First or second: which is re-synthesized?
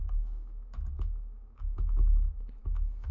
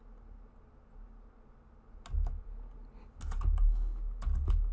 first